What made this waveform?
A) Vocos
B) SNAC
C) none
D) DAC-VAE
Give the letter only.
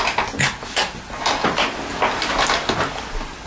C